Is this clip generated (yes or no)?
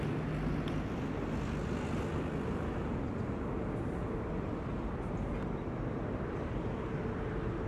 no